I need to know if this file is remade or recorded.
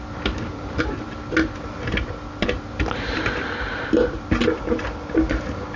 recorded